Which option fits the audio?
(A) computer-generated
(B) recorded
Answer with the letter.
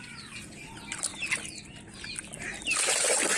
B